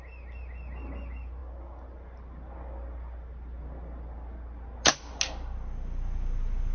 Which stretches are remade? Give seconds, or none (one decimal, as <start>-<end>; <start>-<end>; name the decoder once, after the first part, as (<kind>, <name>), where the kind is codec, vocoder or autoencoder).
none